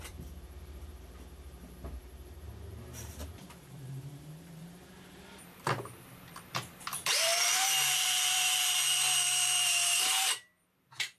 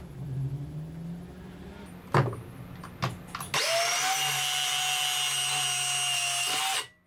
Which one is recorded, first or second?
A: second